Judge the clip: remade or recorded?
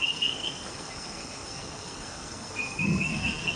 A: remade